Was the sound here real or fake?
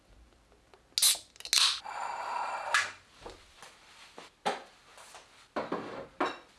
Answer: real